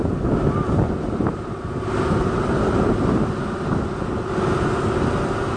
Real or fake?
real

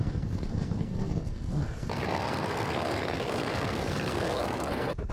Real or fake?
fake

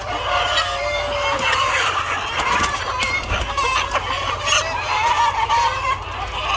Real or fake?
real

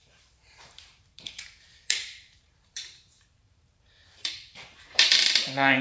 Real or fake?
fake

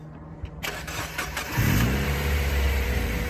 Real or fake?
fake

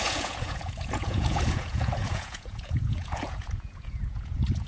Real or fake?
fake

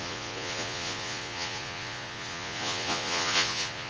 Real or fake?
fake